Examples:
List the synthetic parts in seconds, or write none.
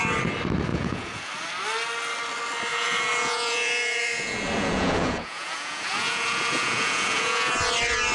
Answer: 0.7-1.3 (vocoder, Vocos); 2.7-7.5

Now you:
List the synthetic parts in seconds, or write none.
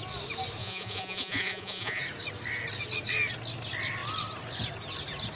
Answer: 0.6-2.0 (vocoder, Vocos)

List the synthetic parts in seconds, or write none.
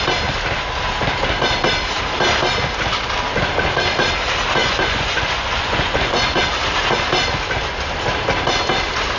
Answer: 4.6-6.4 (vocoder, Vocos)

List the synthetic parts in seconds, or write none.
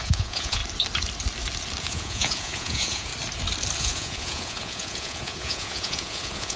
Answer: 0.0-0.6 (vocoder, Vocos); 1.8-3.1; 3.8-6.6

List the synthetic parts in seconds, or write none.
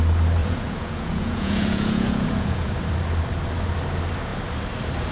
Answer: 0.4-2.7 (vocoder, Vocos)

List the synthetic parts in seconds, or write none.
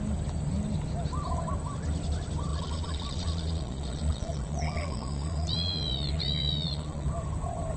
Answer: 2.5-7.1 (vocoder, Vocos)